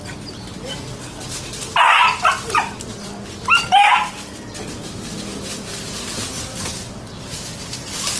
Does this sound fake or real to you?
real